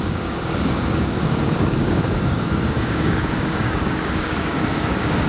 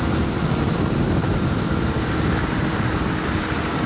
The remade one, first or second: first